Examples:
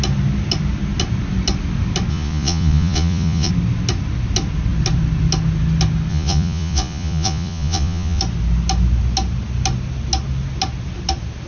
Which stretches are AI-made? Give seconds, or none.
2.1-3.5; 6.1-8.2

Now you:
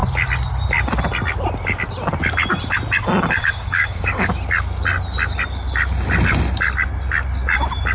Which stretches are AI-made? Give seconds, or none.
3.4-4.3